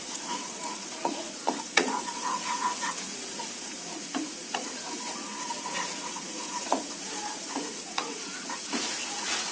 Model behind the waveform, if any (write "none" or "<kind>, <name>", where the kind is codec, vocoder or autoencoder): vocoder, Vocos